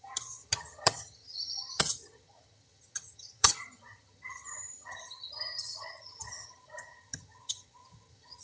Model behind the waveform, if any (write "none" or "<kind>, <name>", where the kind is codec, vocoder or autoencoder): vocoder, HiFi-GAN